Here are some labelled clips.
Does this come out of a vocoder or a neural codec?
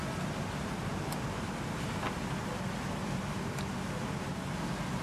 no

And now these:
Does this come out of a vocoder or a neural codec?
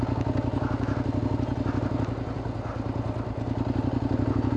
no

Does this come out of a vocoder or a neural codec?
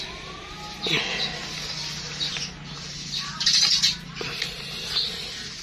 no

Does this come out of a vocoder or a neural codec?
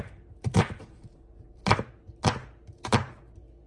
no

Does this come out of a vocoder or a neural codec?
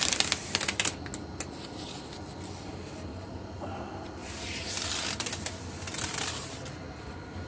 no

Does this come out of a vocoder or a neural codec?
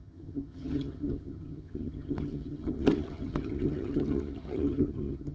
yes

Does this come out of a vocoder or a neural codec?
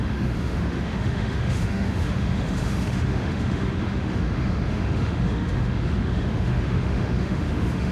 yes